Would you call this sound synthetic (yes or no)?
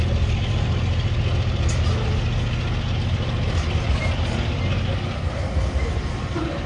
no